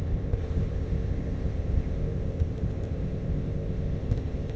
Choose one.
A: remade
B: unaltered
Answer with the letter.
A